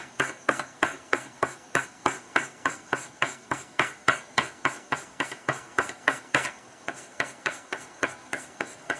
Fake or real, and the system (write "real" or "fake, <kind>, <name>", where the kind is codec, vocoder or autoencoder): fake, codec, SNAC